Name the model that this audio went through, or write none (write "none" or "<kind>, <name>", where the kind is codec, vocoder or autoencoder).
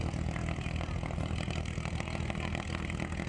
none